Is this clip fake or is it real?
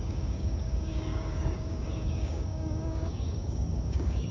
fake